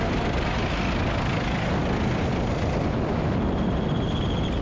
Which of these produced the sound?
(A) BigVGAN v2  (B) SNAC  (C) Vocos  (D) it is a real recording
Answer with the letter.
D